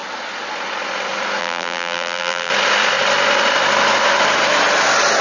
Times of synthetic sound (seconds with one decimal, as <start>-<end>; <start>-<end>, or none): 1.4-2.5